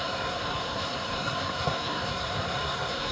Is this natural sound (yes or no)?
no